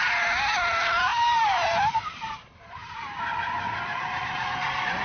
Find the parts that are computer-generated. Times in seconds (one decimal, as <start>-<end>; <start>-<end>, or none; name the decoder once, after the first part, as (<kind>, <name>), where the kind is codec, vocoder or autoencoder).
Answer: 1.1-3.2 (vocoder, BigVGAN v2)